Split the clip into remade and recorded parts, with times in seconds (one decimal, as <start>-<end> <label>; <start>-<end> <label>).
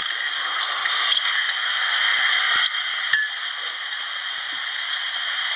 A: 0.0-0.9 remade; 0.9-5.6 recorded